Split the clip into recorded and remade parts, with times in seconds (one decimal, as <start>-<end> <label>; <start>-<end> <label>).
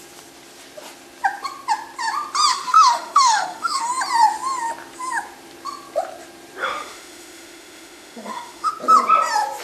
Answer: 0.0-2.5 recorded; 2.5-3.9 remade; 3.9-6.6 recorded; 6.6-8.7 remade; 8.7-9.6 recorded